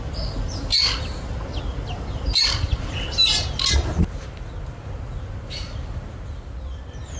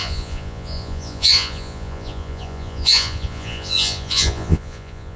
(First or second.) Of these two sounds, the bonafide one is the first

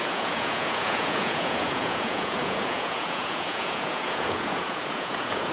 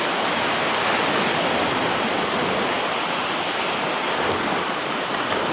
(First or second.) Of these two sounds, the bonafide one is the second